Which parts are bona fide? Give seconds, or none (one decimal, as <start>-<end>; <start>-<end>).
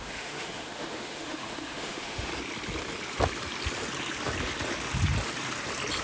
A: 2.3-6.0